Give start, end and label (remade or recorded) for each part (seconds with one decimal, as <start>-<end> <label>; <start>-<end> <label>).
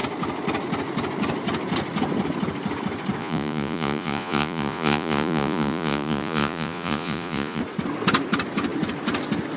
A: 0.0-3.2 recorded; 3.2-7.6 remade; 7.6-9.6 recorded